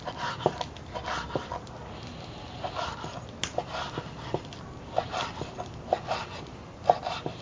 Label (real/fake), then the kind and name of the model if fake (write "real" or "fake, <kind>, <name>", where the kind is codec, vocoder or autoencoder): real